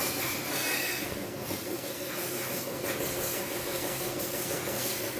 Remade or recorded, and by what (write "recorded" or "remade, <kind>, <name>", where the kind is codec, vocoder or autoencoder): remade, codec, SNAC